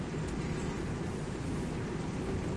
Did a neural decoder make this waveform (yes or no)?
no